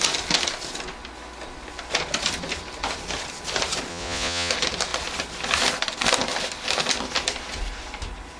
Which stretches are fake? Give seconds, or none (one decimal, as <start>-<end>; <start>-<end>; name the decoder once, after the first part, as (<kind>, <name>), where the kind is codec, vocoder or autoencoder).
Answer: 3.9-4.5 (vocoder, Vocos)